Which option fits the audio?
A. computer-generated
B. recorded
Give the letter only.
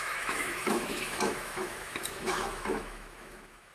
A